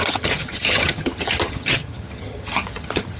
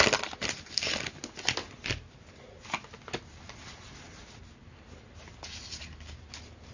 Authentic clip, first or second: second